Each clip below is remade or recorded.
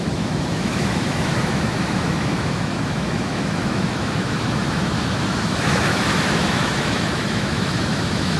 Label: remade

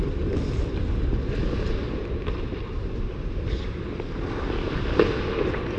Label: recorded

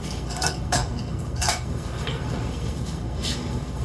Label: remade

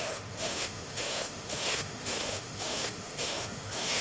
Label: remade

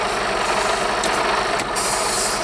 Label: remade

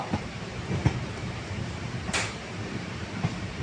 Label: remade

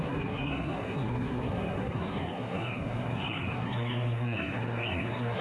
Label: remade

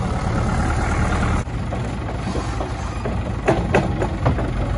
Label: recorded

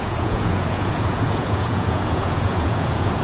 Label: remade